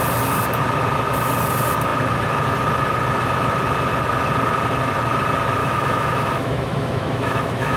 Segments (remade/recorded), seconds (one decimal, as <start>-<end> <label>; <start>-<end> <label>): 0.0-5.6 recorded; 5.6-7.8 remade